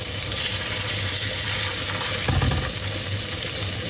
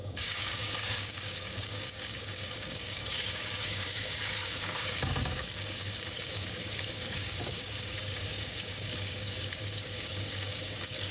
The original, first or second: first